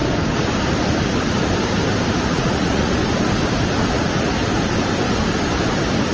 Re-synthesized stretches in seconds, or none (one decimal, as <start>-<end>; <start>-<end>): 2.3-3.0; 3.9-4.4

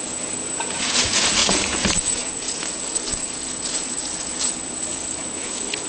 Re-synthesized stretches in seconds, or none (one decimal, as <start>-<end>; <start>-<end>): 0.0-5.9

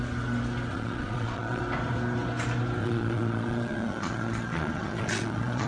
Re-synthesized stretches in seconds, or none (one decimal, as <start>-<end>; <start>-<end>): 0.7-1.6; 2.8-5.7

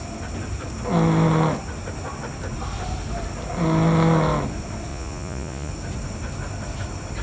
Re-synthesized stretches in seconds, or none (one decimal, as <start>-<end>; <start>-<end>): 4.9-5.7

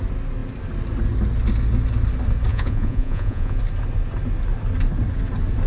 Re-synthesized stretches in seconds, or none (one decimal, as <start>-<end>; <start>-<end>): 2.5-3.6